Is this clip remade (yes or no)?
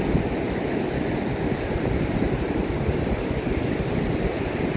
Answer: no